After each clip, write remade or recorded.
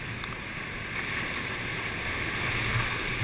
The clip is recorded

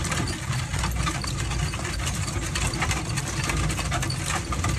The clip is recorded